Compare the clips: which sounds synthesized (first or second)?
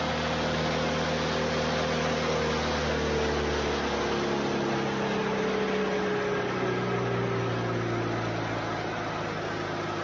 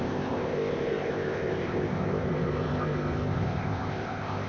second